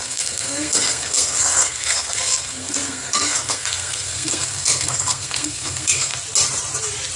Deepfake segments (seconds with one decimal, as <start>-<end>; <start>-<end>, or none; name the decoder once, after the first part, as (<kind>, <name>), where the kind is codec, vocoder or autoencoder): 0.0-6.1 (codec, SNAC)